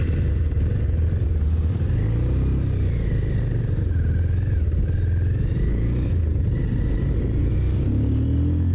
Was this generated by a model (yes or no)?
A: no